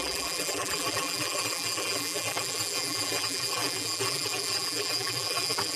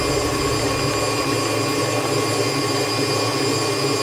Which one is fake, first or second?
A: first